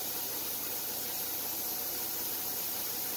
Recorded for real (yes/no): yes